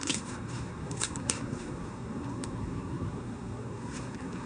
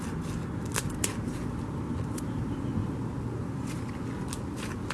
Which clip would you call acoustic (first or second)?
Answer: second